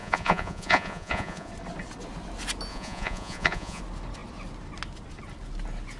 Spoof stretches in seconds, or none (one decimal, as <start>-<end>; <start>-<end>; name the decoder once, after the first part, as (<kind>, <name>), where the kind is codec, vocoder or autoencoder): 0.0-1.5 (vocoder, Vocos); 2.7-3.8